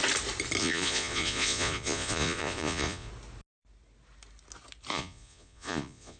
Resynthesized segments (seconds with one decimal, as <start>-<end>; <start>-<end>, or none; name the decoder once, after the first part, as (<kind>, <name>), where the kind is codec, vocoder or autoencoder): 0.6-3.1 (vocoder, Vocos); 4.9-6.2